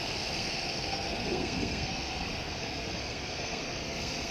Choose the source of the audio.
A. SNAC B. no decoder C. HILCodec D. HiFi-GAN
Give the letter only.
A